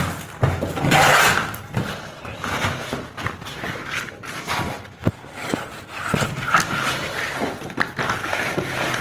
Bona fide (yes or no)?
yes